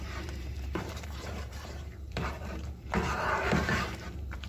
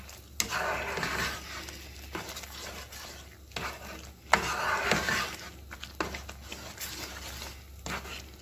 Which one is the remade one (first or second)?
first